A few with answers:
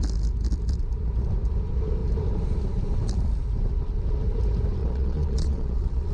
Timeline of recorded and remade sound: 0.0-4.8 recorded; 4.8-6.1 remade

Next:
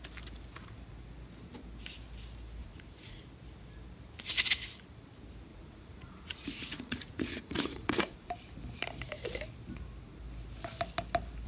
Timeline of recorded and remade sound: 0.0-2.6 recorded; 2.6-3.2 remade; 3.2-5.5 recorded; 5.5-8.3 remade; 8.3-11.5 recorded